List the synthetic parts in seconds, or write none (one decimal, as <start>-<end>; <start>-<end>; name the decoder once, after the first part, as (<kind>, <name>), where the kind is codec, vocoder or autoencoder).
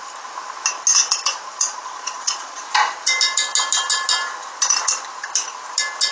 1.5-2.6 (vocoder, Vocos)